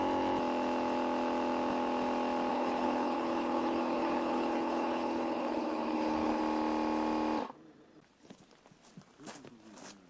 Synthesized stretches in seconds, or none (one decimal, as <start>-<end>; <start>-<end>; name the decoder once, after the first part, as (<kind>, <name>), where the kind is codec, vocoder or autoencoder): 2.5-6.4 (codec, HILCodec)